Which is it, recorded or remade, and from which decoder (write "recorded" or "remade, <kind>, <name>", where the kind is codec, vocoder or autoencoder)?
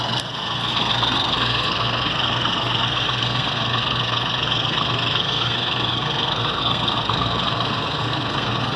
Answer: remade, codec, SNAC